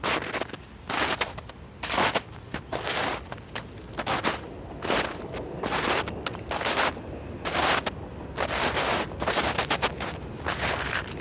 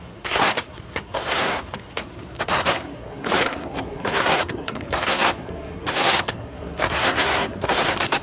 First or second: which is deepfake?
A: second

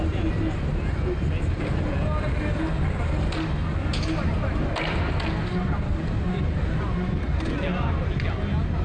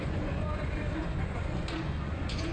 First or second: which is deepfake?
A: second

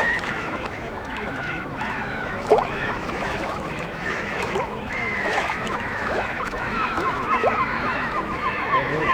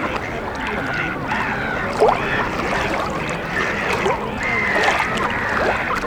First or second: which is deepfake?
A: first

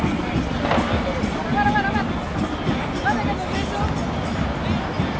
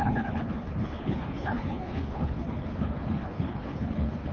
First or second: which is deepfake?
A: second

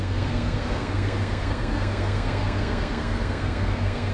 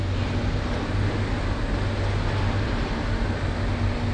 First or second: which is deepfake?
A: first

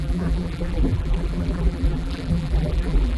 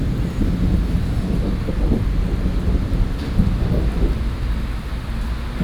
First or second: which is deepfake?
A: first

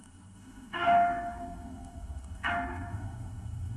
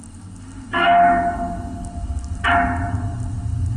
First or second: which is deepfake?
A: first